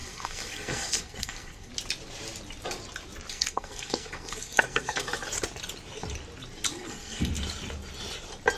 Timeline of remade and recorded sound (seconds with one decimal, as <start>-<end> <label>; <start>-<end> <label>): 0.0-1.7 remade; 1.7-3.3 recorded; 3.3-5.1 remade; 5.1-6.7 recorded; 6.7-7.3 remade; 7.3-8.6 recorded